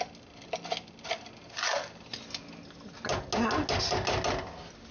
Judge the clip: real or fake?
real